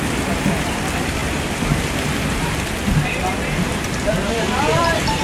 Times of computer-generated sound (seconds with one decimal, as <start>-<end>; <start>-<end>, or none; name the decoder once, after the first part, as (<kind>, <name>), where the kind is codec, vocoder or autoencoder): 0.0-5.2 (vocoder, BigVGAN v2)